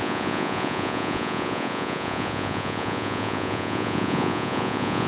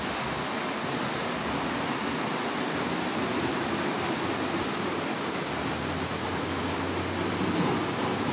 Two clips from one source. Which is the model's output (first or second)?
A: first